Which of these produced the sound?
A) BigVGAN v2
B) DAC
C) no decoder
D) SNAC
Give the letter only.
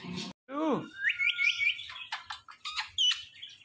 C